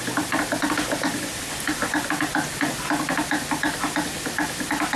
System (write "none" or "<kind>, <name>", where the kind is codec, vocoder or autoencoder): none